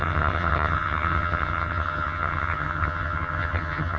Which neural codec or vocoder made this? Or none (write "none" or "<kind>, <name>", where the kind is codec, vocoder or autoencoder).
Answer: vocoder, HiFi-GAN